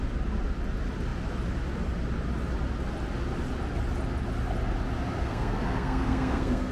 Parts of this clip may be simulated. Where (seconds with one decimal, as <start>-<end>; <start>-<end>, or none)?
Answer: 5.2-6.7

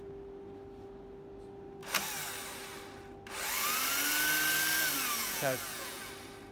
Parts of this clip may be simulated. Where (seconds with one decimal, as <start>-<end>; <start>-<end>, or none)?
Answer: 5.2-6.1

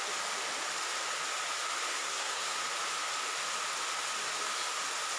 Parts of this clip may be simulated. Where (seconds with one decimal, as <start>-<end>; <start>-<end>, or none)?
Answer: 1.9-2.6

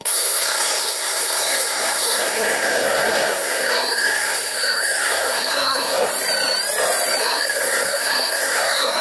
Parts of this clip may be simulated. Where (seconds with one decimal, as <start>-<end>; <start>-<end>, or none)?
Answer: 0.0-6.1; 7.2-9.0